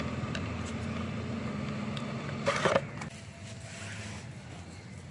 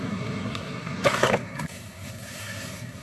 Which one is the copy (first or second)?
second